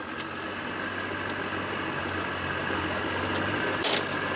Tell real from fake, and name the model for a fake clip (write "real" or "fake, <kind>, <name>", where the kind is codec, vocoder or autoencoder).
real